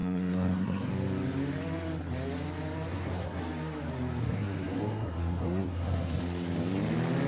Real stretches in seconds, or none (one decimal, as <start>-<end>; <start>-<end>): 0.9-2.9; 3.4-4.2; 6.2-7.3